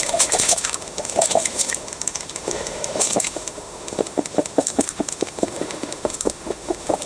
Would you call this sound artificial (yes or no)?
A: yes